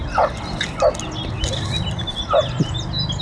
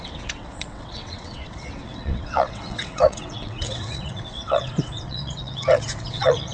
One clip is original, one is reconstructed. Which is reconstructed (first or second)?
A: second